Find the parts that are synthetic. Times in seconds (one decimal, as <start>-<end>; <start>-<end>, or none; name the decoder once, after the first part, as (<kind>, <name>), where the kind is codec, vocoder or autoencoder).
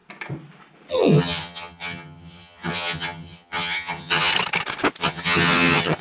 0.9-4.3 (vocoder, HiFi-GAN); 5.0-6.0